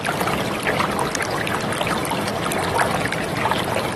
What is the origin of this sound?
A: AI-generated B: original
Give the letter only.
A